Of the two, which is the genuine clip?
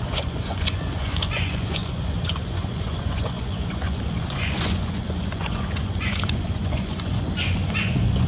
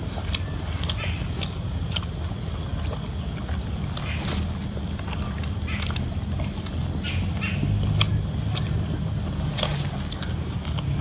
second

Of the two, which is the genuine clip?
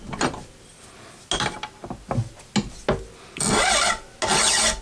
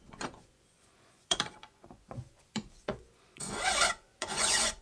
first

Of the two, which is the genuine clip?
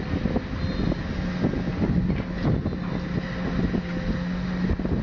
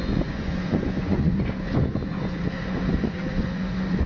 first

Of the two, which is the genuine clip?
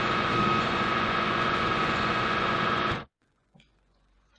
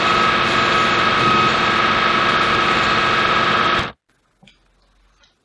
second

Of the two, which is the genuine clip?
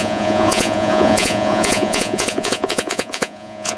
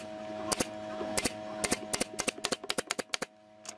second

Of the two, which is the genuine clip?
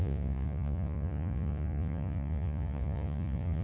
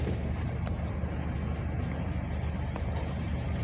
second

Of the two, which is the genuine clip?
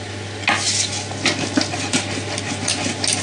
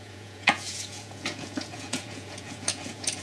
first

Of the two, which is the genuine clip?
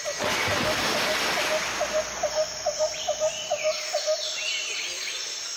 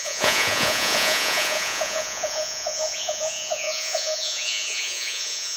first